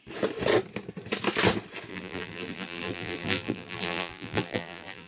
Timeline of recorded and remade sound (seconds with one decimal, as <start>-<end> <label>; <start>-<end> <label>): 0.0-1.9 recorded; 1.9-5.1 remade